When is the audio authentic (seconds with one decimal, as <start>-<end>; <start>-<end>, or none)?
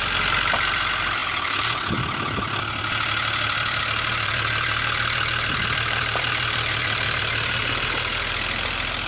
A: 7.6-9.1